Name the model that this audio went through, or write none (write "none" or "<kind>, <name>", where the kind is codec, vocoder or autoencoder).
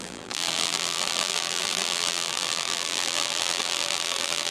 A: vocoder, BigVGAN v2